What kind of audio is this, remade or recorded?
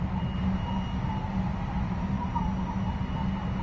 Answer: recorded